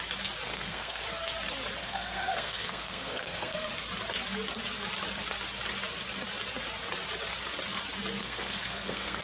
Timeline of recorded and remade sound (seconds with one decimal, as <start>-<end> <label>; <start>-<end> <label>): 0.0-0.5 recorded; 0.5-1.0 remade; 1.0-1.8 recorded; 1.8-3.7 remade; 3.7-8.2 recorded; 8.2-9.2 remade